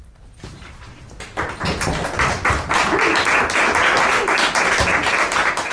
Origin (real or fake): real